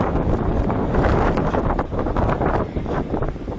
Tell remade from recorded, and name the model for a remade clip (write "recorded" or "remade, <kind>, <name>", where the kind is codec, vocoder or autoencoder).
remade, vocoder, BigVGAN v2